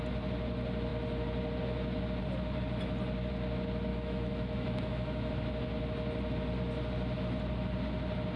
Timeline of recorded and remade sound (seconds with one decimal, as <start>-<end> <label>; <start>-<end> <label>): 0.0-3.9 recorded; 3.9-5.3 remade; 5.3-8.4 recorded